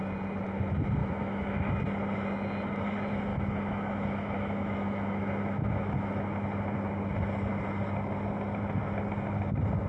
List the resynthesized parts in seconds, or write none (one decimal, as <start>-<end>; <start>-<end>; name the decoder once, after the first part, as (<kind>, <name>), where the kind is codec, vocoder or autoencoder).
1.0-1.7 (autoencoder, DAC-VAE); 3.3-6.2